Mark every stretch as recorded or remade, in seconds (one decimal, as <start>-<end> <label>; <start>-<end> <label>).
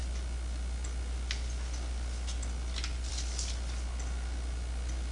0.0-5.1 recorded